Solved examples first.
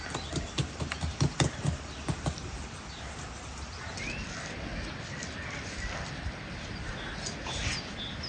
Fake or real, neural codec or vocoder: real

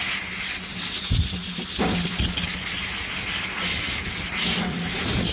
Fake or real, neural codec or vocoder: real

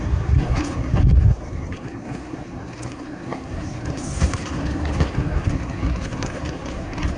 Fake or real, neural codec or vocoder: fake, codec, SNAC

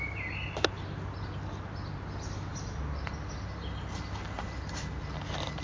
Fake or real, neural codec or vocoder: real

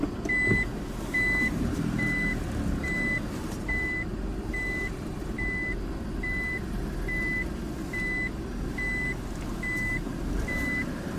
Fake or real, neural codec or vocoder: real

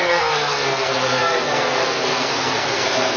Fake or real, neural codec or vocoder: fake, codec, SNAC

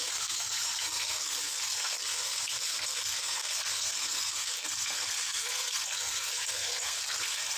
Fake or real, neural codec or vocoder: fake, codec, SNAC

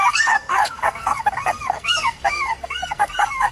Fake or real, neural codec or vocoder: fake, codec, SNAC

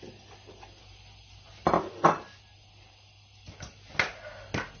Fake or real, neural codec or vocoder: real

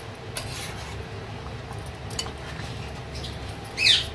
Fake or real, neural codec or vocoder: real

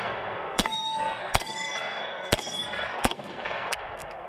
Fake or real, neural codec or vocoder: fake, codec, SNAC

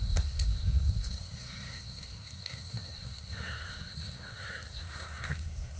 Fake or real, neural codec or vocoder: fake, codec, SNAC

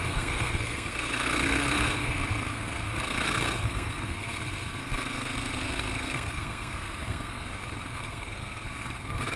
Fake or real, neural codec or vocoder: fake, codec, SNAC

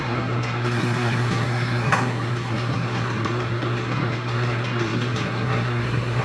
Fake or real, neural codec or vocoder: fake, codec, SNAC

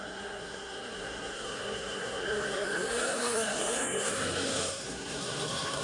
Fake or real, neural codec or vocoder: fake, codec, SNAC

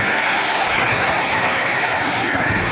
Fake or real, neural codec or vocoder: fake, codec, SNAC